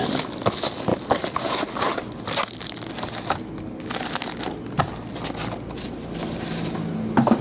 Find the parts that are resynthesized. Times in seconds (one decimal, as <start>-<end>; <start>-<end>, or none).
none